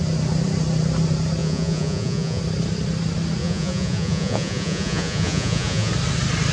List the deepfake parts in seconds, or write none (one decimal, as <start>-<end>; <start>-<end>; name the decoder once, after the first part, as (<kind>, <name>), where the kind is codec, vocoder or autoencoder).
1.4-2.4 (vocoder, Vocos); 3.4-5.9